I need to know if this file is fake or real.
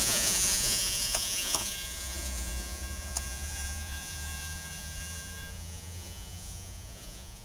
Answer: fake